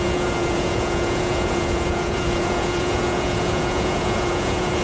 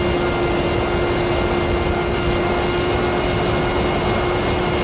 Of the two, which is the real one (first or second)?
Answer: second